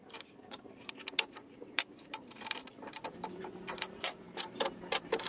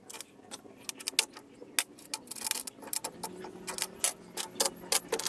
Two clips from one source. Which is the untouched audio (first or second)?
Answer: second